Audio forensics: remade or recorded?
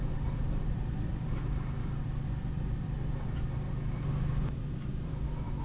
remade